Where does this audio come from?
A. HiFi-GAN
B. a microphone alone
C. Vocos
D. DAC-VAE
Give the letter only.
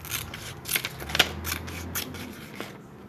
B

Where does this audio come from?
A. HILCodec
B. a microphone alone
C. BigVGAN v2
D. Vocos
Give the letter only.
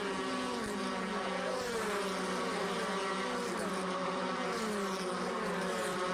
B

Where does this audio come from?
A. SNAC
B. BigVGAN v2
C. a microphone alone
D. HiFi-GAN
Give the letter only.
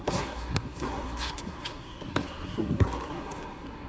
A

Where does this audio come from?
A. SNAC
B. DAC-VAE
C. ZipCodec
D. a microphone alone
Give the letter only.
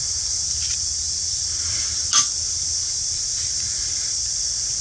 D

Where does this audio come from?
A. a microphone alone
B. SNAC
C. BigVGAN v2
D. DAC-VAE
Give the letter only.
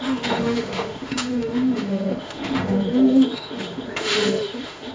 D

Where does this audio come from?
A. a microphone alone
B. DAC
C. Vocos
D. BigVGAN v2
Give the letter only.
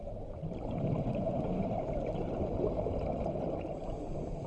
A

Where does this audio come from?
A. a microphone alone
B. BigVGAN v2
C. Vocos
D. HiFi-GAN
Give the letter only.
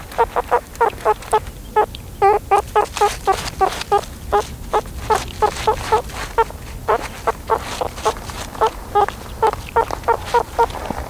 A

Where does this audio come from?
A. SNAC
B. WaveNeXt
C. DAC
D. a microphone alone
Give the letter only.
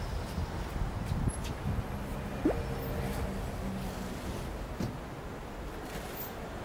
D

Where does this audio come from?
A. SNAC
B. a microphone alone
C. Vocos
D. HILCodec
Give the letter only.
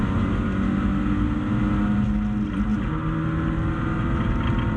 B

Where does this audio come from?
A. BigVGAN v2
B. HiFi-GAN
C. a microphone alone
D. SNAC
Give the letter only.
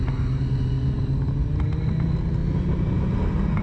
C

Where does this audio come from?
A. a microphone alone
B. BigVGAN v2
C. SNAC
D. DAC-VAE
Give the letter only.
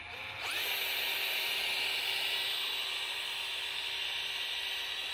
A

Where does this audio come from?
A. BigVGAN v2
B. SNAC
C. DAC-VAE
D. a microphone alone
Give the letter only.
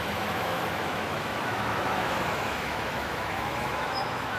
C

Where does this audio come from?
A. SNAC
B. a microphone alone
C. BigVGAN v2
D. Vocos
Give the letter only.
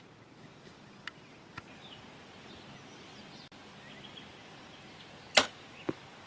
B